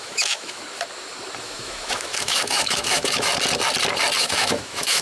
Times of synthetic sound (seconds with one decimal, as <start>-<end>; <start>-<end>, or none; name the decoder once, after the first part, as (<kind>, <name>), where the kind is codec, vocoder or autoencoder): 0.0-0.6 (autoencoder, DAC-VAE); 1.4-3.3; 4.2-5.0